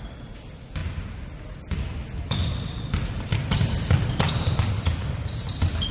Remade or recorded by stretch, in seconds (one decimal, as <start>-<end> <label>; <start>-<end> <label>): 0.0-5.9 recorded